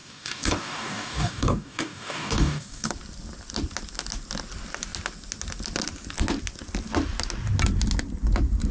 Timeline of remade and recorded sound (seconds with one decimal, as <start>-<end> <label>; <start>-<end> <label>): 0.0-2.9 remade; 2.9-8.7 recorded